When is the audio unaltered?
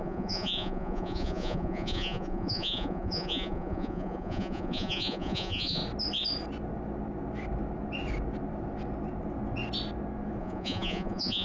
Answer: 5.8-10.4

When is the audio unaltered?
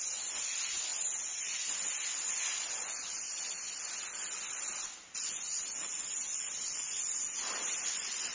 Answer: 0.0-8.3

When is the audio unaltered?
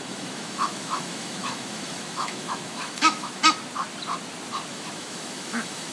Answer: 3.4-4.7